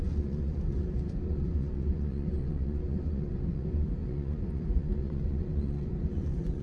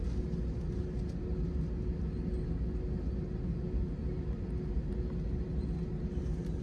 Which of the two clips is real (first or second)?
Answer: second